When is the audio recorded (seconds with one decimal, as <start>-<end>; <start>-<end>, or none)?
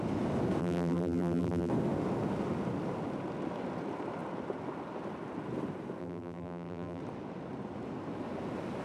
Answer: 0.0-0.6; 1.7-6.0; 7.0-8.8